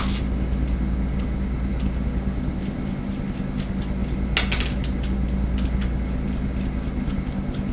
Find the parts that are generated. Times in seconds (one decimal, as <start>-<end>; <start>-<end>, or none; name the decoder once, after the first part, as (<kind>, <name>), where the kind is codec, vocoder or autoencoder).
none